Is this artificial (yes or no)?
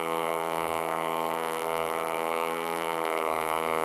yes